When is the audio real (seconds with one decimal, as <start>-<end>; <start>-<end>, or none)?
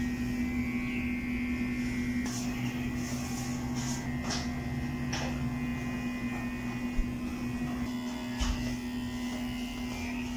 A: 0.0-10.4